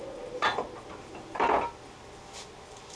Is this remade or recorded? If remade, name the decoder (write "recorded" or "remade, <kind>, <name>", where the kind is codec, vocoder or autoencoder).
recorded